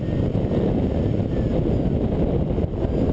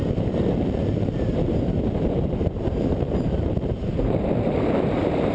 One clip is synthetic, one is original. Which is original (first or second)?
first